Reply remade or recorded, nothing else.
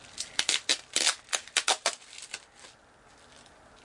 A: recorded